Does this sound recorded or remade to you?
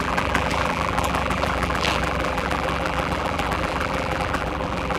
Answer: remade